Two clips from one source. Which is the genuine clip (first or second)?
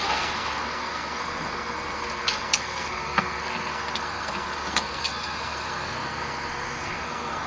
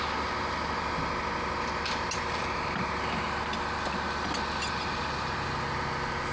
second